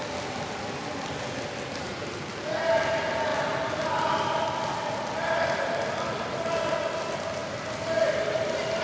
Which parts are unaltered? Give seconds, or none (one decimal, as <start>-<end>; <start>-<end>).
0.0-8.8